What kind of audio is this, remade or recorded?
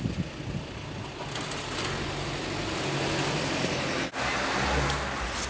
recorded